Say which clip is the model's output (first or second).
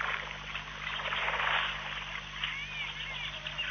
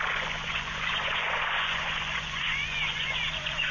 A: second